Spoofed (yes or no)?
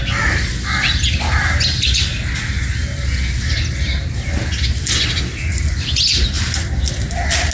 no